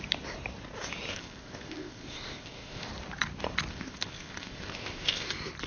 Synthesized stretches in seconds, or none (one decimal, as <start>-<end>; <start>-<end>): 1.1-2.9; 3.7-5.3